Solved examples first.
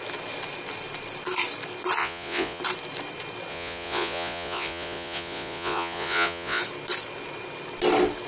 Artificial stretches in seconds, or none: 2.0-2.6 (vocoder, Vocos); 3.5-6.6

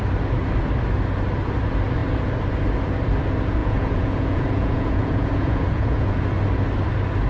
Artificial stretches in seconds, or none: 3.6-6.2 (vocoder, Vocos)

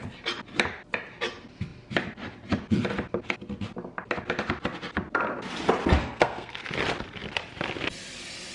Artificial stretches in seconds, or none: 6.0-6.6 (codec, SNAC)

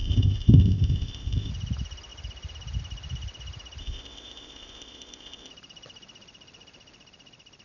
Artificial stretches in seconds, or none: 0.0-1.5 (codec, ZipCodec); 3.8-5.5